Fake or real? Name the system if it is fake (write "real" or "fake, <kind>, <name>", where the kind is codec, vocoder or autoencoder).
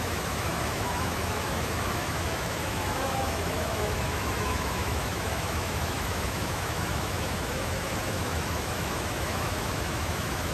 fake, autoencoder, DAC-VAE